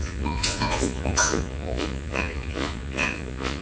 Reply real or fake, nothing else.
fake